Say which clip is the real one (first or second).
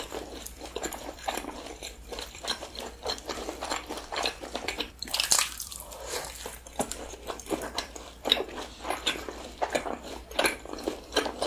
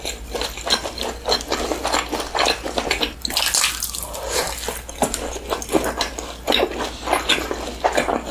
second